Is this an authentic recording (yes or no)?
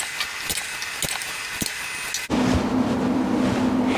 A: yes